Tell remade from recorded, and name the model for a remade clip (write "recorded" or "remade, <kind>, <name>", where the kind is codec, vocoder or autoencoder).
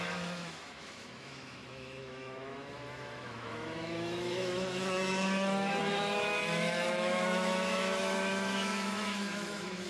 remade, autoencoder, DAC-VAE